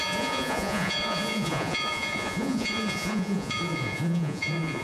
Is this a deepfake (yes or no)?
yes